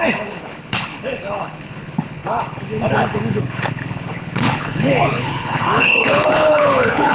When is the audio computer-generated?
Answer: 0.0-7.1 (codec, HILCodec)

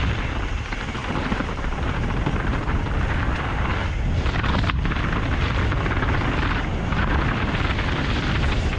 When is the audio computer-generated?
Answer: 1.0-2.2 (vocoder, BigVGAN v2)

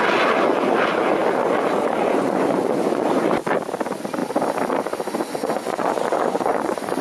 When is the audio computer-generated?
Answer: 1.4-3.3 (vocoder, Vocos); 5.4-7.0

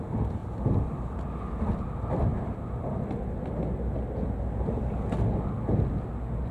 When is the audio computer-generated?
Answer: 0.4-1.1 (vocoder, BigVGAN v2)

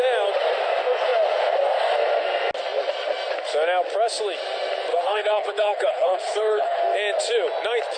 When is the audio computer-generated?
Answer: 4.9-6.8 (codec, HILCodec)

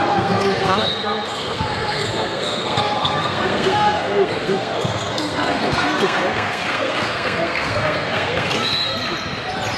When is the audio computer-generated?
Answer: 0.0-8.9 (codec, SNAC)